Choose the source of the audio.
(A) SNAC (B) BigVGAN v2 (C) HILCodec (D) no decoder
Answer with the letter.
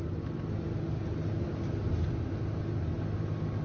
D